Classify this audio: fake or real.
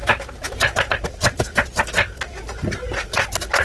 real